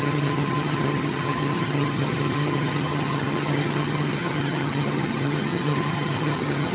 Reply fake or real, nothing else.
fake